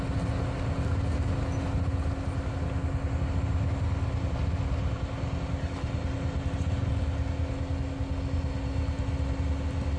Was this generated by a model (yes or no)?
no